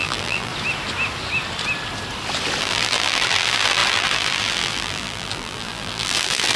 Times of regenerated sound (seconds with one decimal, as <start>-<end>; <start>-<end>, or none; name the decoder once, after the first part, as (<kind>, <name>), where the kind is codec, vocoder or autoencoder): 0.0-0.5 (vocoder, BigVGAN v2); 2.6-6.6